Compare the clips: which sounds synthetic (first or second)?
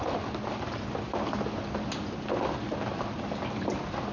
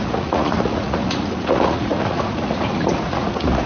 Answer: second